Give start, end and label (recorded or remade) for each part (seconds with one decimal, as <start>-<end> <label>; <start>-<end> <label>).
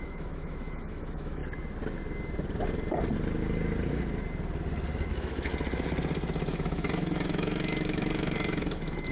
0.0-1.4 remade; 1.4-5.1 recorded; 5.1-5.5 remade; 5.5-6.5 recorded; 6.5-9.1 remade